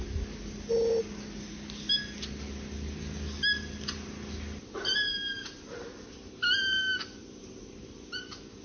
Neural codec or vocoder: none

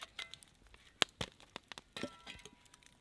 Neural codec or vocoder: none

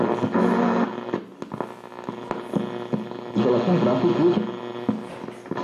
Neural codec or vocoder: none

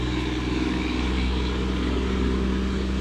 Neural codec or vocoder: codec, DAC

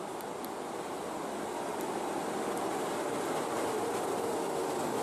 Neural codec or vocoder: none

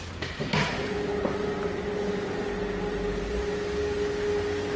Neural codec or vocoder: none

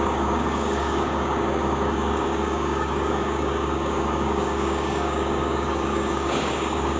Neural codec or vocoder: codec, DAC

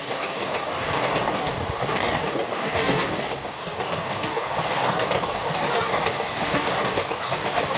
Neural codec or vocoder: codec, DAC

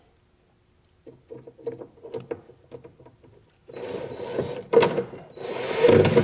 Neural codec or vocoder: none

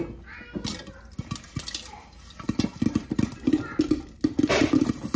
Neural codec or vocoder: none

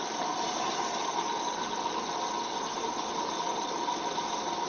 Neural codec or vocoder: none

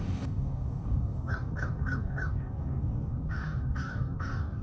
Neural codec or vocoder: codec, DAC